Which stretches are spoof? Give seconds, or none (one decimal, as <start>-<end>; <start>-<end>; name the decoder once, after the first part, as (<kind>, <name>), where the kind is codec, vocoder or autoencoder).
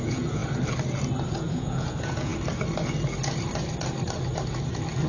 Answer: 0.0-0.4 (vocoder, Vocos); 1.3-2.3